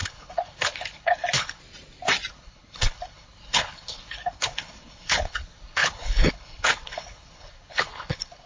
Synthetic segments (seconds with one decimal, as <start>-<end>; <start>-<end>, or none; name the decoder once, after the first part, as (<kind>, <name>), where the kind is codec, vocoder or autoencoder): 0.0-1.6 (codec, HILCodec); 2.3-8.5